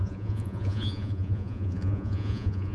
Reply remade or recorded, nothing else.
remade